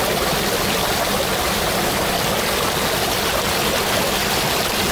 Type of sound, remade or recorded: recorded